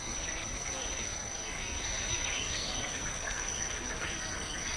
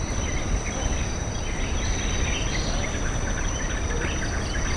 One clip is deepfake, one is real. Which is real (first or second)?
second